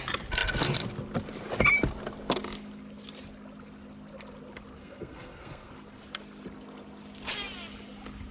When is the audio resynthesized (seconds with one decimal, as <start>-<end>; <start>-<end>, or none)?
4.8-5.7